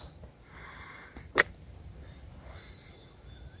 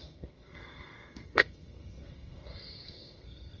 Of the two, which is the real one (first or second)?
first